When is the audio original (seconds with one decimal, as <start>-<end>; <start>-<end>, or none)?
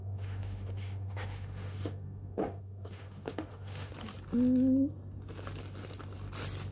3.9-6.7